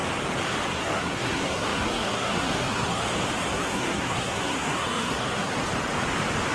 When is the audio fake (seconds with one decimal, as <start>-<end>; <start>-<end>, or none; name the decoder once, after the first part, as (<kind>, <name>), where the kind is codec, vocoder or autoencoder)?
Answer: 0.7-3.0 (codec, SNAC); 3.5-5.6